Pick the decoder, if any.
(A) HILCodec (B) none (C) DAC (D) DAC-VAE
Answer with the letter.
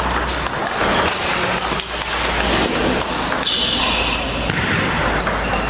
B